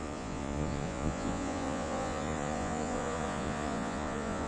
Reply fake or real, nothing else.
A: fake